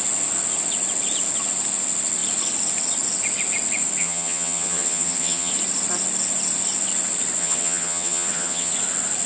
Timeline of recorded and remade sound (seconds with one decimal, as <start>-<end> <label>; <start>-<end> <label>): 0.0-4.0 recorded; 4.0-5.5 remade; 5.5-7.4 recorded; 7.4-8.7 remade; 8.7-9.3 recorded